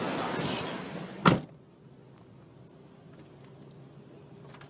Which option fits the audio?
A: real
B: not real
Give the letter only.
A